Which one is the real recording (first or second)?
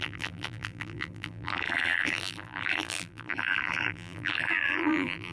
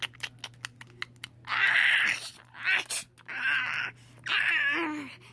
second